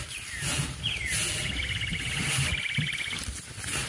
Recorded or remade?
recorded